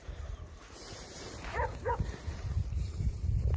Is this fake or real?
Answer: fake